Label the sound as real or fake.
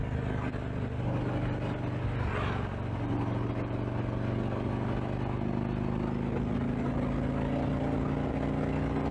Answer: real